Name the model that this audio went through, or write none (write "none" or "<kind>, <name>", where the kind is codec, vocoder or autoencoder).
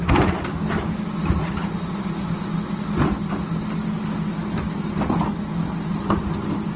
none